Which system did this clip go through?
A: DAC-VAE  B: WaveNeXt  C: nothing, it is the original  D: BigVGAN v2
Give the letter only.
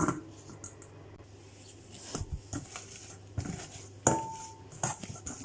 C